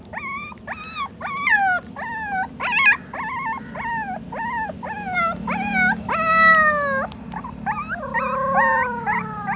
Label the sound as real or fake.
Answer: real